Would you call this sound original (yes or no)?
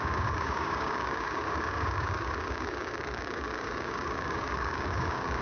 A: no